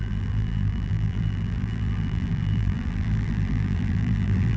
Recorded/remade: remade